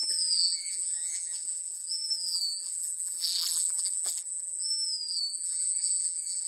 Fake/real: fake